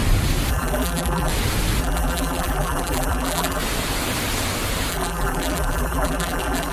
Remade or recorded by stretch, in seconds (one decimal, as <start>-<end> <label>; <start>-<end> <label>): 0.0-0.5 recorded; 0.5-1.3 remade; 1.3-1.8 recorded; 1.8-3.6 remade; 3.6-4.9 recorded; 4.9-6.7 remade